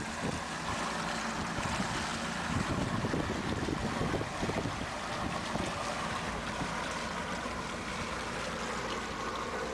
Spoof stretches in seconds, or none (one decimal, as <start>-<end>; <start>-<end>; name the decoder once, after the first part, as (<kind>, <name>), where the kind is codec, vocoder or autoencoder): none